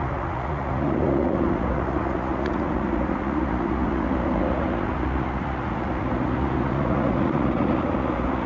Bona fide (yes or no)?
no